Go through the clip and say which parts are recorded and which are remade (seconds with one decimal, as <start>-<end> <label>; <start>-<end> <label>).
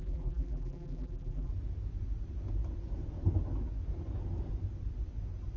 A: 0.0-1.5 remade; 1.5-5.6 recorded